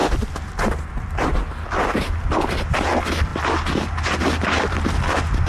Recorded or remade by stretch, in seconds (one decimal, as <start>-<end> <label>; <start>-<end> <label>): 0.0-5.5 recorded